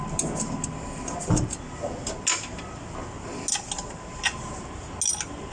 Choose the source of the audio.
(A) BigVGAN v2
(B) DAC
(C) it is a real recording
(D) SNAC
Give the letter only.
C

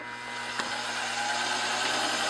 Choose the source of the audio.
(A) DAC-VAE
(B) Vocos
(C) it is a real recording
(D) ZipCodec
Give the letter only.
C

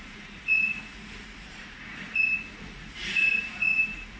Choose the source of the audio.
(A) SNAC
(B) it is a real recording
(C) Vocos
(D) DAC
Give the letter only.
C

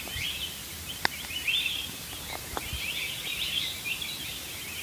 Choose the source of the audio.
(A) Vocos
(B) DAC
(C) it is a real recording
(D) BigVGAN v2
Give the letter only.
D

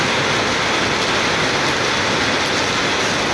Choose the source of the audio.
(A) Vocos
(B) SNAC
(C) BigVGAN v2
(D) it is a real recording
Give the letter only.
D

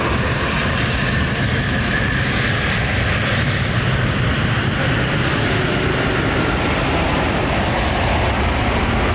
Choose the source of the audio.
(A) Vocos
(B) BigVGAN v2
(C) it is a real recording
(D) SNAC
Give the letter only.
C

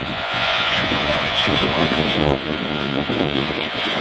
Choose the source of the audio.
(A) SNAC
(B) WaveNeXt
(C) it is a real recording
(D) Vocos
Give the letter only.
D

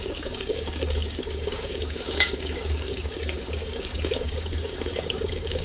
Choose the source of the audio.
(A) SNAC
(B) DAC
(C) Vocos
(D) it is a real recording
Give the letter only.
B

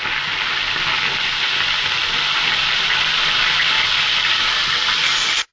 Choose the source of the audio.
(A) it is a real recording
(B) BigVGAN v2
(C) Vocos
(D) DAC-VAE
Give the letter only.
A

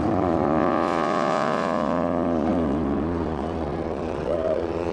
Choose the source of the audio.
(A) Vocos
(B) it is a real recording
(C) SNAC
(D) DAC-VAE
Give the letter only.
A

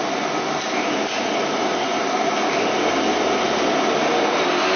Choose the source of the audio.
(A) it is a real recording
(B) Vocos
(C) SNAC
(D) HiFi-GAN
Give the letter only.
A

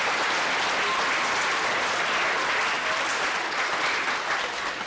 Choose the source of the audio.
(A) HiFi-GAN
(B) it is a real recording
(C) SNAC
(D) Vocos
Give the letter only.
B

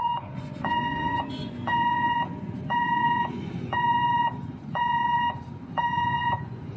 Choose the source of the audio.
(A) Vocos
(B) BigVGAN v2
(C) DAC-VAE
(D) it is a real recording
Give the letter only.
A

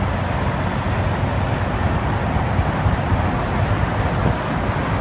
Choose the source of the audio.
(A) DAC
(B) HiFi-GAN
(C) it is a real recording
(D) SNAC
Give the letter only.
C